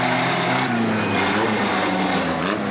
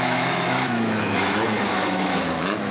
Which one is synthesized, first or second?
second